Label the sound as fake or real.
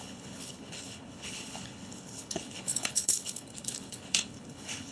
fake